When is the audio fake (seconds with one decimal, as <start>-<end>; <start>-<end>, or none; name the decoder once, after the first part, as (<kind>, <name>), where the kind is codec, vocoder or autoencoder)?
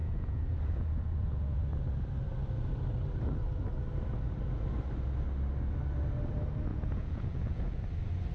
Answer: 0.0-1.6 (vocoder, Vocos); 6.7-7.8